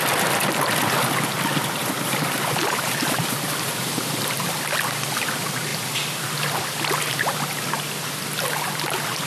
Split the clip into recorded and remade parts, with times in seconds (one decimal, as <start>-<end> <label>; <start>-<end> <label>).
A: 0.0-1.8 recorded; 1.8-3.0 remade; 3.0-9.3 recorded